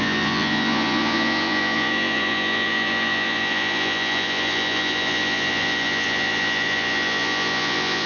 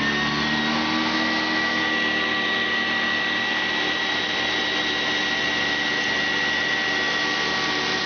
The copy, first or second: first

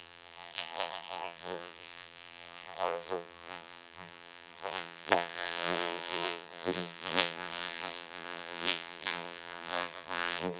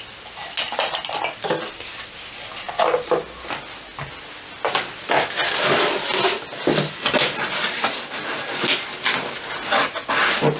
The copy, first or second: first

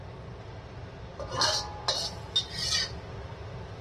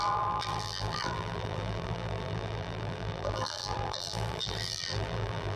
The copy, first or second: second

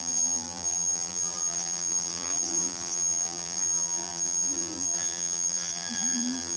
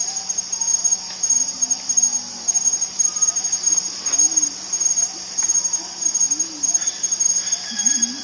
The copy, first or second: first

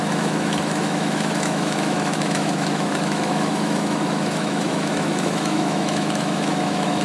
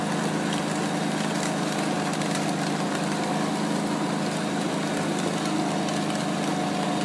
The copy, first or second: first